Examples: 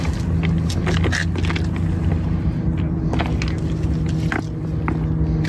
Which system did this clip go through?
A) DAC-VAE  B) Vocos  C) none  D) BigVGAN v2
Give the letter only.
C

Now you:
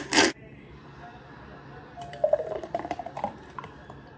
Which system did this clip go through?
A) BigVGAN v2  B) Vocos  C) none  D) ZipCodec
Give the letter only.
A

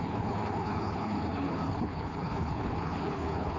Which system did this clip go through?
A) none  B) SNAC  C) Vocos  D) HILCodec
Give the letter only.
D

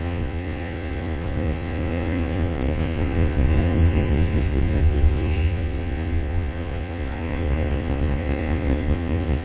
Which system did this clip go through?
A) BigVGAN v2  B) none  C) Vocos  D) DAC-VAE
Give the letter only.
C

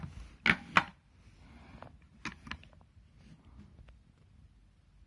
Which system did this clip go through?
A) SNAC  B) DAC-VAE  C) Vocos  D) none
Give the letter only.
D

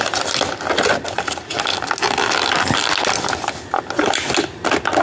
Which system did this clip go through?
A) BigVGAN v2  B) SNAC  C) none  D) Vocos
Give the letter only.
C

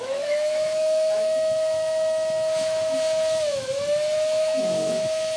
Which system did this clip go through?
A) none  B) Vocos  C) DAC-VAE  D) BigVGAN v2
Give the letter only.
C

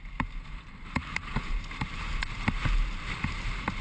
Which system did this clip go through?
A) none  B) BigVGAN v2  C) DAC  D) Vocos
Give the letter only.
B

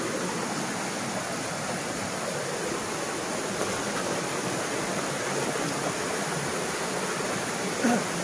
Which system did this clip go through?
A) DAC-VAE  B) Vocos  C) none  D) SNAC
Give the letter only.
C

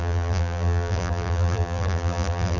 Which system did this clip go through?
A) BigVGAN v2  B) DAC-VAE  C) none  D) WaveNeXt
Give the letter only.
A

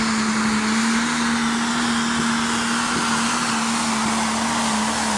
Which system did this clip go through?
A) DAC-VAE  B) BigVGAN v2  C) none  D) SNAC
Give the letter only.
C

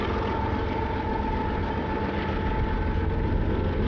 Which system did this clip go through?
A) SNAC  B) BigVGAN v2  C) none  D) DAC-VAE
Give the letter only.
C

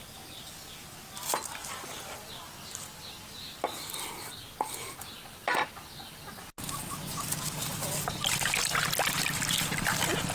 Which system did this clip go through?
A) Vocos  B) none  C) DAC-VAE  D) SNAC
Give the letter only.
B